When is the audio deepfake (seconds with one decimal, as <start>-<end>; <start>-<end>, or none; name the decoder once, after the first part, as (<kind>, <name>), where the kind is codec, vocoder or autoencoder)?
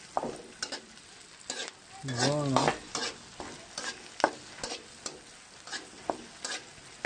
none